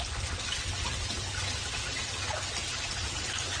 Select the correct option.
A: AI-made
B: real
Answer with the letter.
B